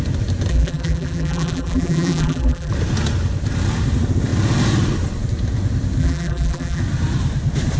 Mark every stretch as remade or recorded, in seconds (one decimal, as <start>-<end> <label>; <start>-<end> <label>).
0.0-0.5 recorded; 0.5-2.7 remade; 2.7-6.0 recorded; 6.0-6.8 remade; 6.8-7.8 recorded